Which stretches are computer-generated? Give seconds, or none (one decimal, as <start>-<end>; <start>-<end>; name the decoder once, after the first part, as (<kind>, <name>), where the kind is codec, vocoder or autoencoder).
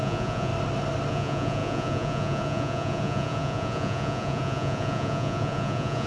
0.0-0.5 (vocoder, Vocos); 1.1-6.1